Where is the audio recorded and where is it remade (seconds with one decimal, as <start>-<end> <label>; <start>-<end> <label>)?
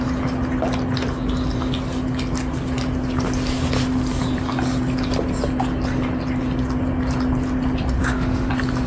0.0-8.0 recorded; 8.0-8.5 remade; 8.5-8.9 recorded